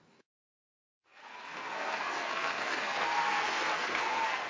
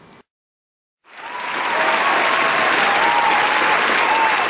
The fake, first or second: first